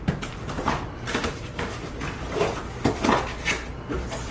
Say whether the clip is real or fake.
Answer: real